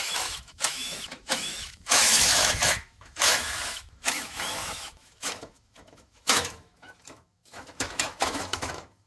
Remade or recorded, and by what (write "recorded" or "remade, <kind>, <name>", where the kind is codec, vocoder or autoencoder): remade, autoencoder, DAC-VAE